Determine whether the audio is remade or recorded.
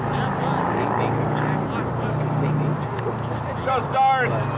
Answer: recorded